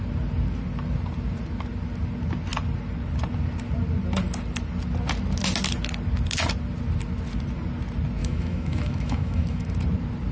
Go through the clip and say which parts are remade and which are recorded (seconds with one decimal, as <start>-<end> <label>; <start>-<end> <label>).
0.0-8.2 recorded; 8.2-9.7 remade; 9.7-10.3 recorded